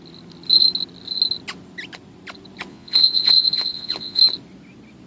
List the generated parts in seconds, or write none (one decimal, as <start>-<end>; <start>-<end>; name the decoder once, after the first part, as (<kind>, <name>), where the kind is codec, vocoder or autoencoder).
2.7-4.2 (vocoder, Vocos)